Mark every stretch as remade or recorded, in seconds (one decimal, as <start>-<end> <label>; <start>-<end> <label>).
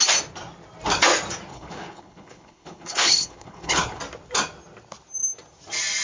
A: 0.0-1.5 recorded; 1.5-4.0 remade; 4.0-6.0 recorded